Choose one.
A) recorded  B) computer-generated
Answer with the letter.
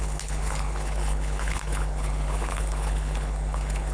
B